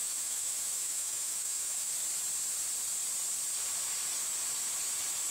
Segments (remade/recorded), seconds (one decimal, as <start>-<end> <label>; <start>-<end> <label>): 0.0-1.9 remade; 1.9-5.3 recorded